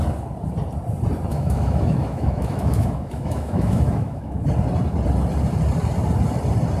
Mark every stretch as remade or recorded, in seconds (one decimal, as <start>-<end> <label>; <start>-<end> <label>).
0.0-1.3 recorded; 1.3-4.5 remade; 4.5-6.8 recorded

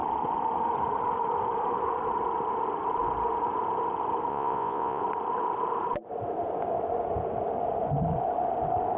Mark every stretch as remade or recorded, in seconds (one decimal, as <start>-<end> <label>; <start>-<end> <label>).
0.0-4.3 recorded; 4.3-5.0 remade; 5.0-9.0 recorded